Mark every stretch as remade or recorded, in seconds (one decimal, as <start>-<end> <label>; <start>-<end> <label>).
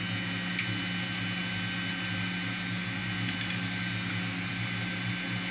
0.0-5.5 recorded